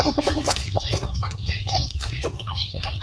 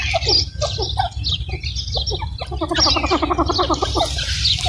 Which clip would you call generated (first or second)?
first